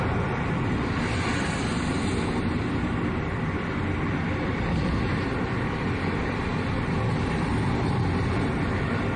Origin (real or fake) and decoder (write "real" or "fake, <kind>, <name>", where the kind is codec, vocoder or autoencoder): real